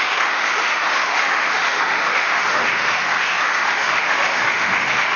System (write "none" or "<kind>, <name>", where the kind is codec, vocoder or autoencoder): autoencoder, DAC-VAE